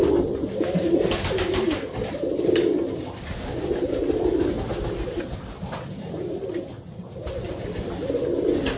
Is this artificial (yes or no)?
no